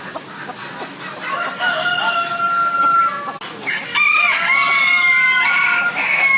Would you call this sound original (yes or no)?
yes